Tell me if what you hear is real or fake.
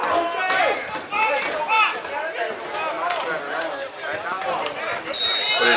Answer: real